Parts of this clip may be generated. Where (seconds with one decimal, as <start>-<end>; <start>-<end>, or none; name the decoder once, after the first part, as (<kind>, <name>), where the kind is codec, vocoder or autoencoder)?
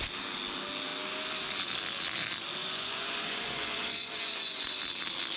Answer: 2.6-4.8 (vocoder, Vocos)